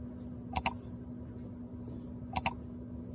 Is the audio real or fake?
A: real